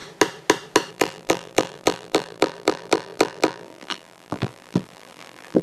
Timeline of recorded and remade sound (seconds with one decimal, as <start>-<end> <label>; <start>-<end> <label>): 0.0-0.9 recorded; 0.9-5.6 remade